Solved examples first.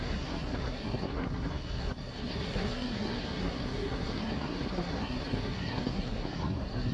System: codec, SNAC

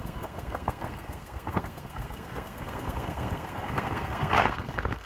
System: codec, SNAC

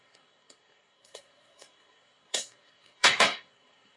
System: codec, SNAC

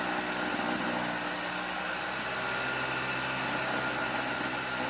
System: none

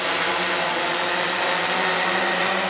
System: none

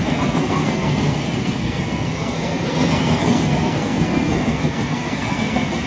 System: codec, SNAC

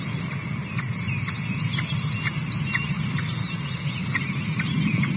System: none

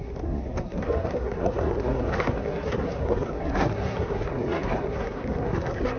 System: codec, SNAC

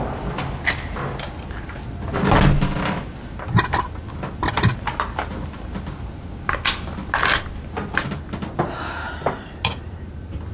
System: none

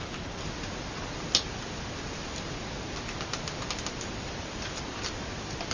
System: none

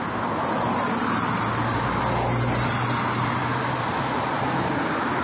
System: none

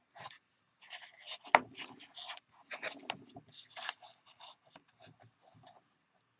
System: none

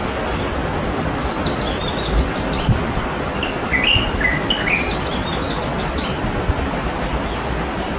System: none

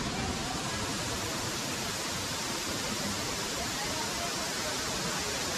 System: none